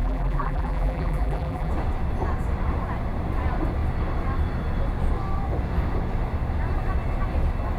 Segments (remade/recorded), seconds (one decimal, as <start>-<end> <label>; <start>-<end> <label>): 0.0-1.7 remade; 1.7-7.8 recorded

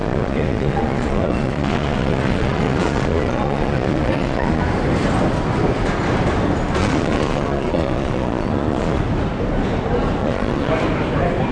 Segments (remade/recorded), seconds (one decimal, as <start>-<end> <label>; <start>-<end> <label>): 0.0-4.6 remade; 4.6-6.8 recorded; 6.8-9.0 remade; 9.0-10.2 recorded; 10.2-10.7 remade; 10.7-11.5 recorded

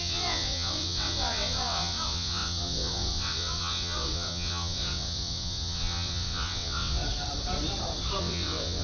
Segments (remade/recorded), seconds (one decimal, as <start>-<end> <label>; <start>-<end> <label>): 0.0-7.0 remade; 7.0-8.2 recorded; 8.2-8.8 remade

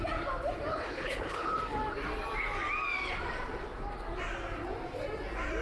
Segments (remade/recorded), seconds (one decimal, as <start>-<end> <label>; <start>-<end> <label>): 0.0-0.7 recorded; 0.7-1.6 remade; 1.6-5.6 recorded

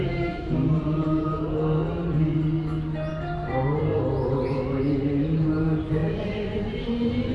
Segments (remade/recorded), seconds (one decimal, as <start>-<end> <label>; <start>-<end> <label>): 0.0-1.8 remade; 1.8-3.1 recorded; 3.1-3.8 remade; 3.8-4.5 recorded; 4.5-7.3 remade

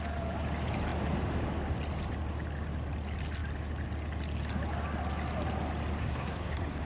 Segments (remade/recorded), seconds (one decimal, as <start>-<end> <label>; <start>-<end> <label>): 0.0-6.0 recorded; 6.0-6.8 remade

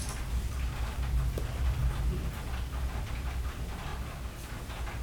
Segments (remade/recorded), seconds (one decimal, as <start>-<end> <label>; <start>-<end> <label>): 0.0-5.0 recorded

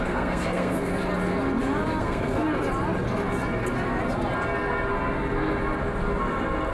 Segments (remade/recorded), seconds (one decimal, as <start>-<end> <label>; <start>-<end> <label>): 0.0-0.9 remade; 0.9-2.0 recorded; 2.0-2.4 remade; 2.4-6.7 recorded